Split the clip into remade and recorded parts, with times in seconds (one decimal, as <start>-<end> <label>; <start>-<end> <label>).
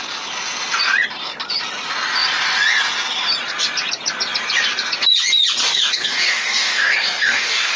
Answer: 0.0-5.6 recorded; 5.6-7.8 remade